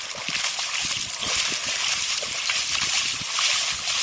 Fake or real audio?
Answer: real